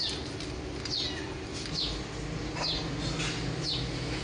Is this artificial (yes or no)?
no